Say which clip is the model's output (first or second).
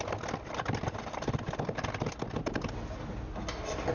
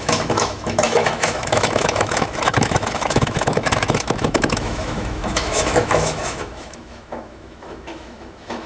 second